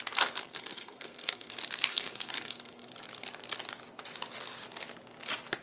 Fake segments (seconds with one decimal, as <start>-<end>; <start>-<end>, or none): 0.4-1.5; 1.9-2.9

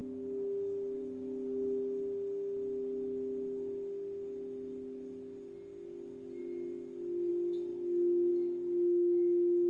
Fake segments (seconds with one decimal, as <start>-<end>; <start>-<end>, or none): none

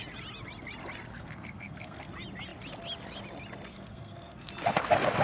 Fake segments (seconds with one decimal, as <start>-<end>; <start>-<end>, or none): 1.1-2.1; 3.7-4.5

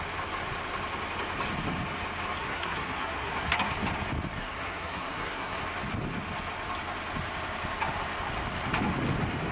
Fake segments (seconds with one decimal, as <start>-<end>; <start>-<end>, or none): 2.4-3.7; 4.4-5.6

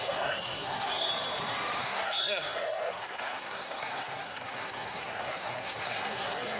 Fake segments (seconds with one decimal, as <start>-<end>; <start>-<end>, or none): 0.0-1.1; 1.8-6.6

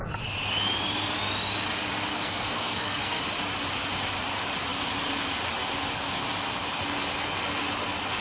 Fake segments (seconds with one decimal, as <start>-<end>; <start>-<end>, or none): 2.1-3.2

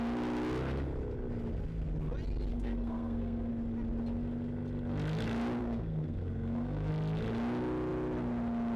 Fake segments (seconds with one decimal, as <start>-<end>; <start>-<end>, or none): 2.5-3.5; 5.6-6.9